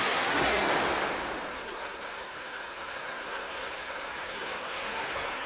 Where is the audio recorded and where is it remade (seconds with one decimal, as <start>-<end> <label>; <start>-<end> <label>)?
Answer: 0.0-0.7 remade; 0.7-1.5 recorded; 1.5-5.5 remade